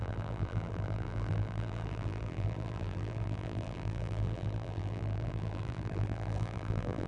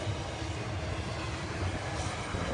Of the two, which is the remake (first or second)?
first